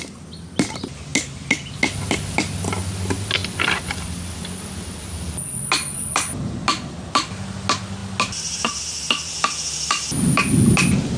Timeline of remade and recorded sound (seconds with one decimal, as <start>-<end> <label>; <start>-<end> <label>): 0.0-11.2 recorded

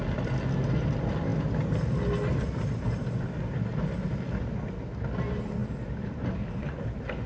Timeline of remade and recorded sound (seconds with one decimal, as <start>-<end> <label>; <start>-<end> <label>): 0.0-7.3 recorded

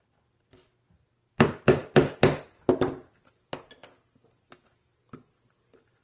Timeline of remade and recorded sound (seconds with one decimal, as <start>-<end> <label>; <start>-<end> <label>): 0.0-6.0 recorded

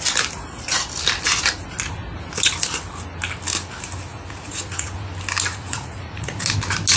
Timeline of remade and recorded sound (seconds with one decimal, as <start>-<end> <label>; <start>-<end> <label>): 0.0-4.1 recorded; 4.1-5.1 remade; 5.1-5.5 recorded; 5.5-6.4 remade; 6.4-7.0 recorded

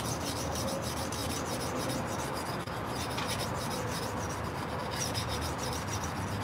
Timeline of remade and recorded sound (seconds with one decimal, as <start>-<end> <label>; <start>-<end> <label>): 0.0-6.4 recorded

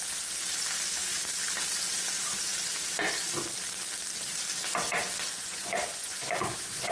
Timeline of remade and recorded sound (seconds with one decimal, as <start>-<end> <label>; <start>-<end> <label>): 0.0-5.3 recorded; 5.3-6.9 remade

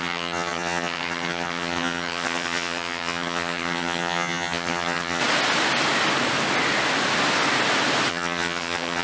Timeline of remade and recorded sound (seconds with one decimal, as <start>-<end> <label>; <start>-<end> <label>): 0.0-5.2 remade; 5.2-8.1 recorded; 8.1-9.0 remade